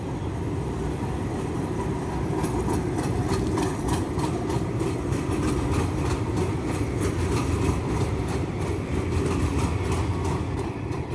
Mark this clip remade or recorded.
recorded